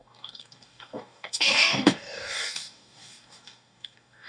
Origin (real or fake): fake